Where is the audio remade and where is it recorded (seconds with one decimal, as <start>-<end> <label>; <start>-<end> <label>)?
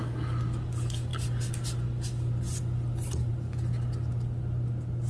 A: 0.0-5.1 recorded